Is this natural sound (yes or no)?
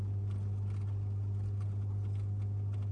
yes